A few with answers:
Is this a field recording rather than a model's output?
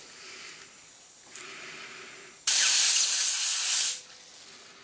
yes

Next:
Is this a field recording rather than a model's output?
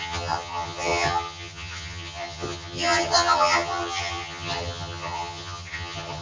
no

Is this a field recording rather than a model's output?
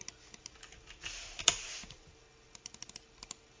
yes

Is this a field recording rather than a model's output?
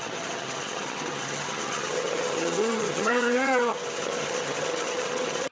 no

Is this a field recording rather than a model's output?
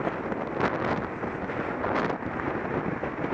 yes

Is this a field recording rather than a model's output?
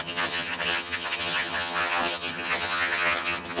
no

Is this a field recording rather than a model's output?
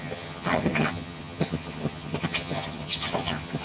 no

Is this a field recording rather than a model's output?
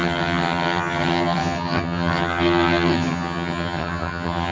no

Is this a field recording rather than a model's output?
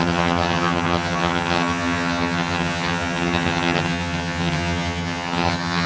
no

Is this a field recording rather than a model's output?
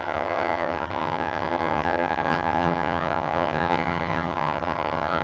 no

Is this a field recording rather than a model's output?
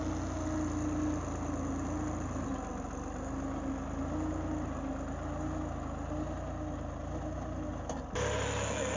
yes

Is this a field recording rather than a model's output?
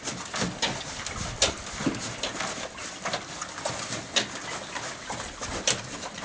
yes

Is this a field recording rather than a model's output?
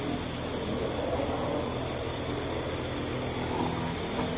yes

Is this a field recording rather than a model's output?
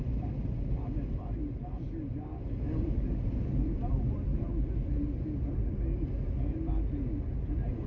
yes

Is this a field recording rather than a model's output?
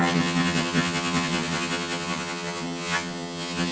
no